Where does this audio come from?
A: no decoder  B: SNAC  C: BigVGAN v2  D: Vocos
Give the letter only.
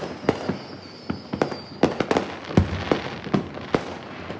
A